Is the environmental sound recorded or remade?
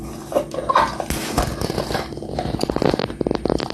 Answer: recorded